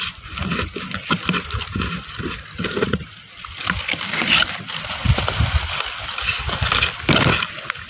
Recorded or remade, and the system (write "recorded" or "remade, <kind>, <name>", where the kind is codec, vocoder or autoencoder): recorded